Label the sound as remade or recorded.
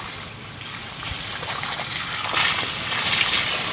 recorded